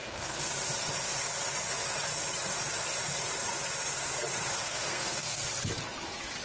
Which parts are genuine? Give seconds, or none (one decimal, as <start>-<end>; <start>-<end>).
0.5-4.6; 5.4-6.4